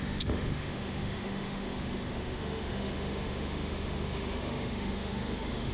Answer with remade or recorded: remade